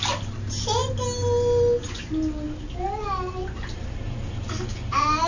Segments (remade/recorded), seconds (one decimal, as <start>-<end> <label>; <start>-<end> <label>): 0.0-5.3 recorded